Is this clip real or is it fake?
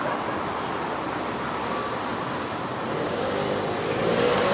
real